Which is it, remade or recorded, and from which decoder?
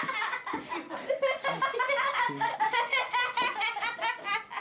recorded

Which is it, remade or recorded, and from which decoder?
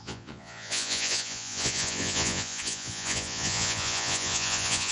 remade, vocoder, Vocos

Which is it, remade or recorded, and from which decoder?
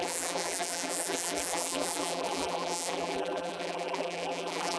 remade, vocoder, BigVGAN v2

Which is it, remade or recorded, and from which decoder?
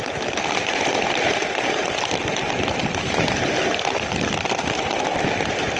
recorded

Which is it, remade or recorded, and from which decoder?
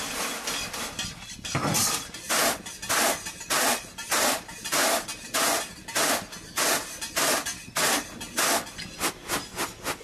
recorded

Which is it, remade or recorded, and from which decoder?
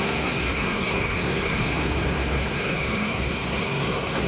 remade, codec, SNAC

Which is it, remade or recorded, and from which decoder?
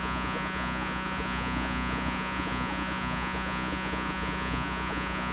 remade, vocoder, Vocos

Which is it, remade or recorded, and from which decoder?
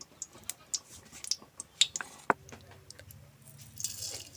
recorded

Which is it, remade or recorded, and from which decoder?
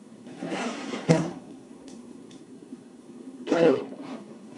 remade, codec, SNAC